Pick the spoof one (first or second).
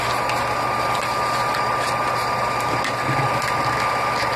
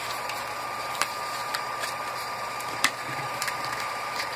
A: second